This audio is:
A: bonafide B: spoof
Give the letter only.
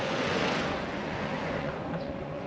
B